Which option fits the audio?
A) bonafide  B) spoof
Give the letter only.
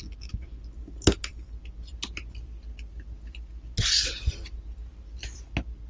A